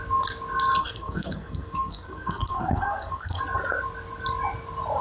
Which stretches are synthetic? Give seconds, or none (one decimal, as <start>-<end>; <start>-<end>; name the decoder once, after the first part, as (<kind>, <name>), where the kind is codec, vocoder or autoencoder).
0.8-3.4 (codec, SNAC)

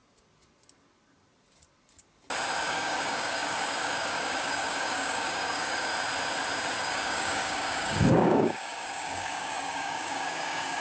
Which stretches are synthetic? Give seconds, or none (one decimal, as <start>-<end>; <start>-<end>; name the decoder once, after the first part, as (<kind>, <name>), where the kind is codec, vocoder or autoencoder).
2.7-5.9 (codec, DAC); 6.8-10.8

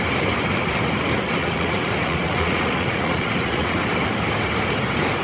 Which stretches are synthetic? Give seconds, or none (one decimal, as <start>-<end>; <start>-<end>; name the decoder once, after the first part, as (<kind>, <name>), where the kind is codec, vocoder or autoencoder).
1.4-3.8 (vocoder, Vocos)

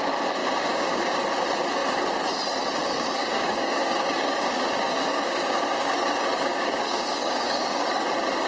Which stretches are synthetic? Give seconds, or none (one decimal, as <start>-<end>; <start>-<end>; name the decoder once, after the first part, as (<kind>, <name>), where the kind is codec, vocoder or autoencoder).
0.4-1.0 (codec, DAC); 3.2-8.1

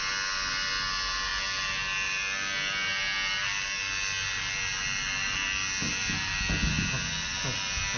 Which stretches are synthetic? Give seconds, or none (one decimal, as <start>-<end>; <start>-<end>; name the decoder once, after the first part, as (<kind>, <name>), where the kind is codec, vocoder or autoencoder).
none

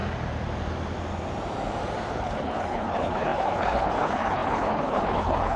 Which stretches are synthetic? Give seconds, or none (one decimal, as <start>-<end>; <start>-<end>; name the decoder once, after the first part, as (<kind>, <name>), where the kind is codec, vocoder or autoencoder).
2.1-5.6 (codec, HILCodec)

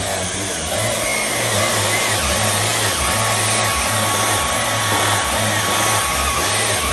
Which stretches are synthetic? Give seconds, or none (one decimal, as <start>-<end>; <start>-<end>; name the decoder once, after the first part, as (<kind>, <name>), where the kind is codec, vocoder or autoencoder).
none